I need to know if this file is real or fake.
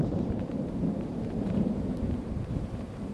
fake